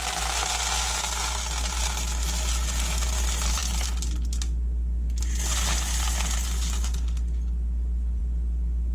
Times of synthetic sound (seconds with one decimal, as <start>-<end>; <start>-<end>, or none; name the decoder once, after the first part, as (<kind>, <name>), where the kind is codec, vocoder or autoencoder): none